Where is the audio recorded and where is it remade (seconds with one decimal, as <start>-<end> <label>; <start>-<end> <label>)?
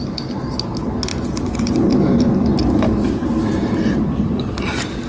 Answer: 0.0-1.1 recorded; 1.1-2.3 remade; 2.3-3.5 recorded; 3.5-4.5 remade; 4.5-5.1 recorded